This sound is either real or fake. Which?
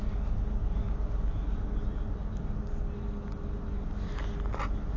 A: real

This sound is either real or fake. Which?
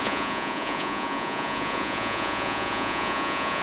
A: fake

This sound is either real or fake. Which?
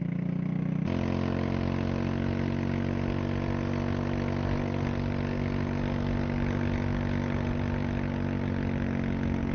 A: real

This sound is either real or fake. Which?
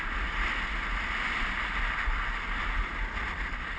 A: real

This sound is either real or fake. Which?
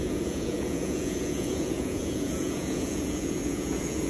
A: fake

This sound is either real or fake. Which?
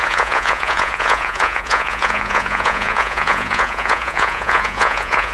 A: fake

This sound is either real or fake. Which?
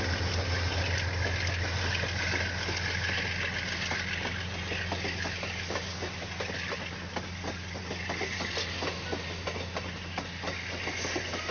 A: real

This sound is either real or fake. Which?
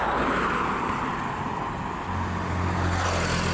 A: real